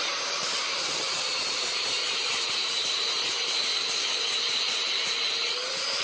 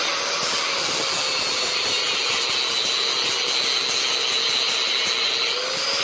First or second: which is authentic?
second